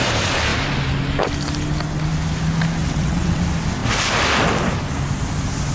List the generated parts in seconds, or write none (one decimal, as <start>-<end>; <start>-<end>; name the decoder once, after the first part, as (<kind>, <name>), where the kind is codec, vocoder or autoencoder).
2.8-3.4 (vocoder, WaveNeXt)